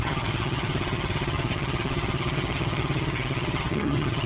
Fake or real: fake